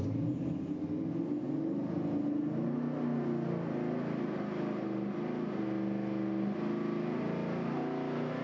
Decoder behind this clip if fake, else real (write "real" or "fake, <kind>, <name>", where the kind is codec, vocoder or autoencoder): real